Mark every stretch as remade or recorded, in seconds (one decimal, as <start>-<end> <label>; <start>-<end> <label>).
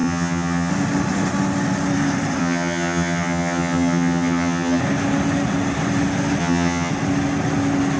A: 0.0-0.7 remade; 0.7-2.4 recorded; 2.4-4.8 remade; 4.8-6.4 recorded; 6.4-6.9 remade; 6.9-8.0 recorded